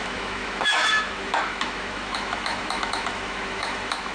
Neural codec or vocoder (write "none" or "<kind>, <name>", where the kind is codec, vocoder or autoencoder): autoencoder, DAC-VAE